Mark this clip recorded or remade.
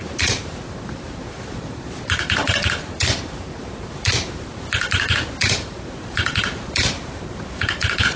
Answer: remade